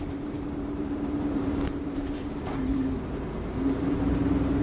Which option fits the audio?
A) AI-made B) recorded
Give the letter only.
A